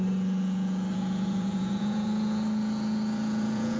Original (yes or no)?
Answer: no